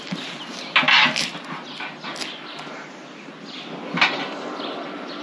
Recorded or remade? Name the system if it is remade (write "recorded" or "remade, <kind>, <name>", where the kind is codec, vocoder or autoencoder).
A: recorded